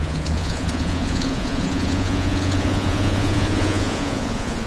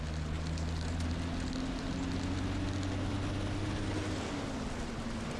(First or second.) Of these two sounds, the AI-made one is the first